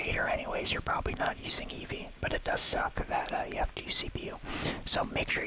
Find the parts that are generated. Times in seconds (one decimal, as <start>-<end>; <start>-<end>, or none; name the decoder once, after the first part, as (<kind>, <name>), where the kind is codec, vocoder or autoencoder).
0.0-1.6 (codec, DAC); 2.0-2.8